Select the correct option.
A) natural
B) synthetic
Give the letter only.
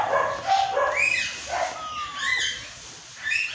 A